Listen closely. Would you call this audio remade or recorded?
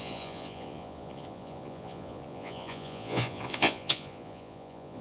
remade